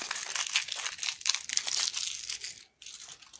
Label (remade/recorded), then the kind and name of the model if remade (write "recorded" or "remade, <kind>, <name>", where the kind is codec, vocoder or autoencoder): recorded